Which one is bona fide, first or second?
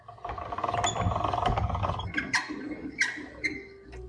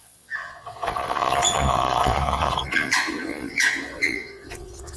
first